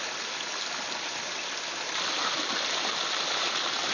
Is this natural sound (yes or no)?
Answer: yes